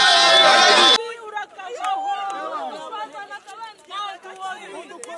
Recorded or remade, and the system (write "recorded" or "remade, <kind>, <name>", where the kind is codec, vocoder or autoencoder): recorded